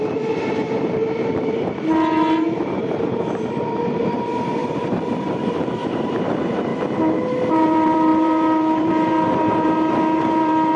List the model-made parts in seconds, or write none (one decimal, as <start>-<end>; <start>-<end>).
0.0-6.7; 7.5-10.8